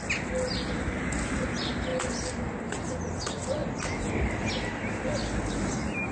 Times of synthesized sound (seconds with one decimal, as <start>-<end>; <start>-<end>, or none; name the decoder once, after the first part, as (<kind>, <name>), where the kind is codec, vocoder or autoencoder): none